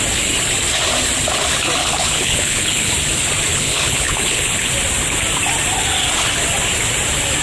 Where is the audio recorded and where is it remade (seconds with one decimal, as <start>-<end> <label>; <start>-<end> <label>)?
0.0-1.8 recorded; 1.8-2.9 remade; 2.9-3.5 recorded; 3.5-4.7 remade; 4.7-7.4 recorded